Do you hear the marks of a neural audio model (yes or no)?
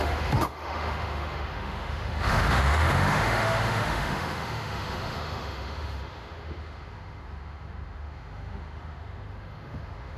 yes